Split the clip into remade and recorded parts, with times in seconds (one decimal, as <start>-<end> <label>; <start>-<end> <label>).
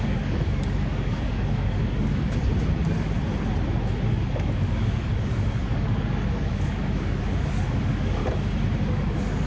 0.0-2.5 remade; 2.5-4.1 recorded; 4.1-8.2 remade; 8.2-8.9 recorded; 8.9-9.5 remade